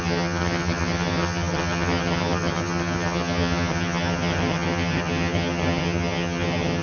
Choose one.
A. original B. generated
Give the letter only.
B